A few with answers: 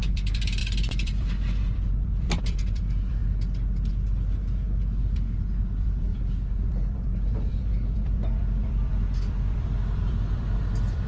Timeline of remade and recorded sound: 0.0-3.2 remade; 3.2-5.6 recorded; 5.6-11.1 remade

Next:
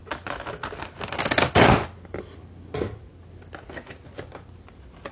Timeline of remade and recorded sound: 0.0-5.1 recorded

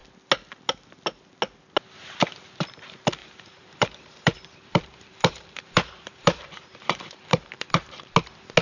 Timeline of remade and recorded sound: 0.0-3.2 recorded; 3.2-8.1 remade; 8.1-8.6 recorded

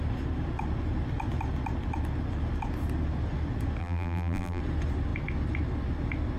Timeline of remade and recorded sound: 0.0-3.8 recorded; 3.8-4.6 remade; 4.6-6.4 recorded